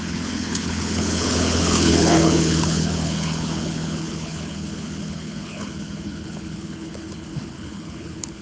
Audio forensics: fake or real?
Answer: fake